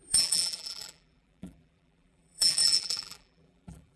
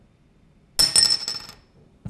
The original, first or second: second